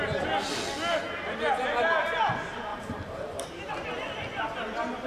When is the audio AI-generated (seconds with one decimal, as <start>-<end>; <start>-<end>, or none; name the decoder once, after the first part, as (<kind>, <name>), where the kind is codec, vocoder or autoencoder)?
1.0-1.8 (vocoder, BigVGAN v2); 2.7-3.7